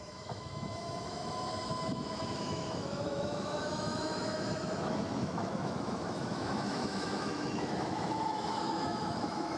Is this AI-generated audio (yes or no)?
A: yes